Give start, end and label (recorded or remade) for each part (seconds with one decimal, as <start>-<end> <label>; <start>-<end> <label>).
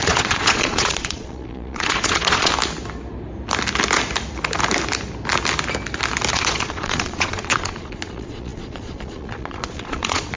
0.0-2.5 remade; 2.5-6.3 recorded; 6.3-10.4 remade